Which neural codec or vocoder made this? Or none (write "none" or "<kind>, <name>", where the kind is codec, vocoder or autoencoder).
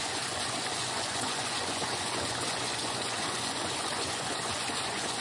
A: vocoder, Vocos